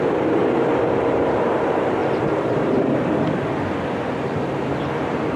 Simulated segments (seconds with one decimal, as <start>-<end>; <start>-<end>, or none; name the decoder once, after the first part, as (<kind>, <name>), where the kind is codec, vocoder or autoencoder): 0.0-0.4 (vocoder, BigVGAN v2); 1.0-2.0; 4.1-5.4